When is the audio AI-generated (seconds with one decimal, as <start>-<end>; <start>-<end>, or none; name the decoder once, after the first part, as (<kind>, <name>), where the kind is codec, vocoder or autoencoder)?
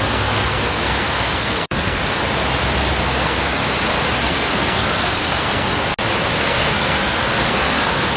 0.0-2.0 (codec, SNAC); 3.0-3.6; 4.2-5.7; 6.4-8.2